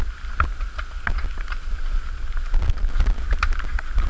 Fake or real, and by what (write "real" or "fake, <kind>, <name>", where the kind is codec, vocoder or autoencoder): real